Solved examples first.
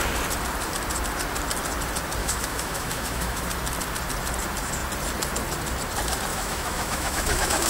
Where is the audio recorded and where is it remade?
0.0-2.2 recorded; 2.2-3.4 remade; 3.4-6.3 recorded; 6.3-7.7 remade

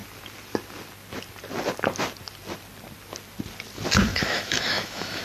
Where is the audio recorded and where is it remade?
0.0-4.1 recorded; 4.1-5.2 remade

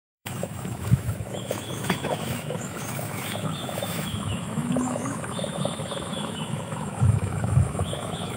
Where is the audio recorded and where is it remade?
0.0-8.4 remade

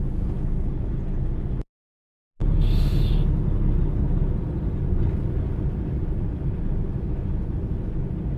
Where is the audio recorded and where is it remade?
0.0-2.4 recorded; 2.4-3.1 remade; 3.1-8.4 recorded

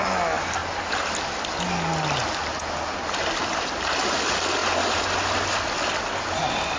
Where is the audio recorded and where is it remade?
0.0-6.8 recorded

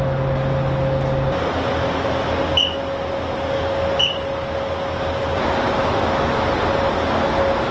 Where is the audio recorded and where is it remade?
0.0-5.8 recorded; 5.8-6.3 remade; 6.3-7.7 recorded

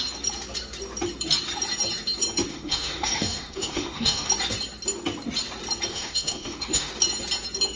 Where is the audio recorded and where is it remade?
0.0-2.5 recorded; 2.5-4.3 remade; 4.3-5.9 recorded; 5.9-6.9 remade; 6.9-7.8 recorded

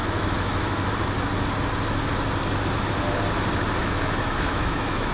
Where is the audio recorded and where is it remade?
0.0-0.9 remade; 0.9-3.8 recorded; 3.8-5.1 remade